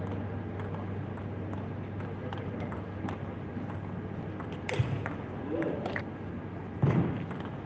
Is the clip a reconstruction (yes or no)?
no